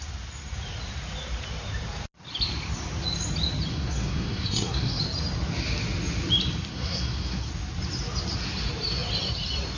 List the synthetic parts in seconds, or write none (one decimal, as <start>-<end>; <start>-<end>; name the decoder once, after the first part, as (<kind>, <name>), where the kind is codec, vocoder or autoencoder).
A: 3.7-5.0 (codec, SNAC); 6.7-7.5